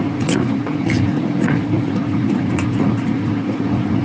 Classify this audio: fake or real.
fake